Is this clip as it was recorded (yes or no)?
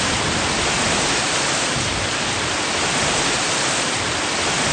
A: yes